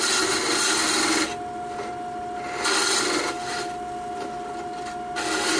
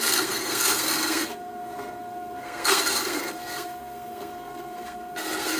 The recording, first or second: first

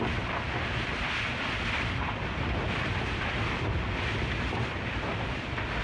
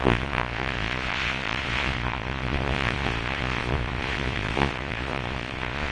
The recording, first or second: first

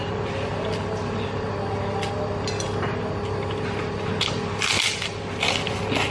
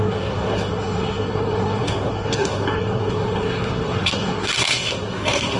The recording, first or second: first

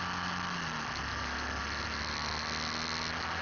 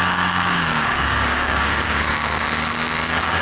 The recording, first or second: first